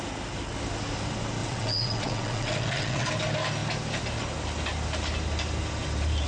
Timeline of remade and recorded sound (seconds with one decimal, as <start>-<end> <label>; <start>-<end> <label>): 0.0-1.4 recorded; 1.4-3.1 remade; 3.1-6.3 recorded

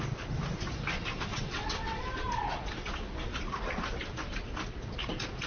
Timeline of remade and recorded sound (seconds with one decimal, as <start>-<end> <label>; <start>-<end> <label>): 0.0-1.3 recorded; 1.3-2.0 remade; 2.0-5.5 recorded

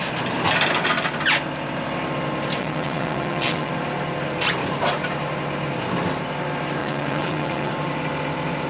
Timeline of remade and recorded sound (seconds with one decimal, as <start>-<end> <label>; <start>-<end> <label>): 0.0-2.6 recorded; 2.6-3.7 remade; 3.7-6.8 recorded; 6.8-7.7 remade; 7.7-8.7 recorded

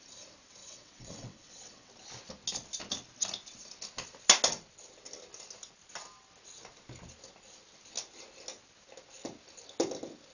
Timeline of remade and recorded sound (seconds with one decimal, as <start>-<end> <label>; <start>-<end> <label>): 0.0-0.6 recorded; 0.6-1.9 remade; 1.9-10.3 recorded

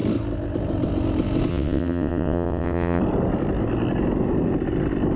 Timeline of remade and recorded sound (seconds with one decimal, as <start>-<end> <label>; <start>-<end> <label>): 0.0-1.5 recorded; 1.5-3.0 remade; 3.0-5.2 recorded